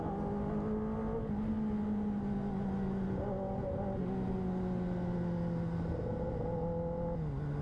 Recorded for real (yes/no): yes